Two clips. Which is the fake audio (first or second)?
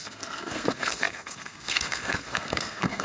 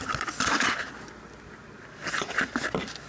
first